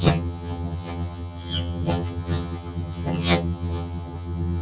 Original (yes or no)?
no